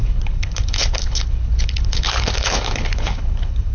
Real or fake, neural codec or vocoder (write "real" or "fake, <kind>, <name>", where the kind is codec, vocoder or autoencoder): fake, codec, HILCodec